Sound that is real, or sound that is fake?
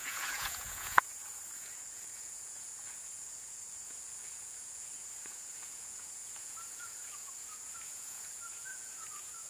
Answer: fake